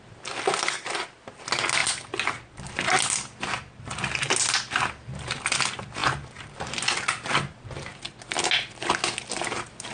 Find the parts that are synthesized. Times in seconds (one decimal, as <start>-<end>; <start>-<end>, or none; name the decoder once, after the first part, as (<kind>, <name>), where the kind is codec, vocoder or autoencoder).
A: none